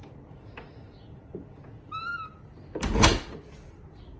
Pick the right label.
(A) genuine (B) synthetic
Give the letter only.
A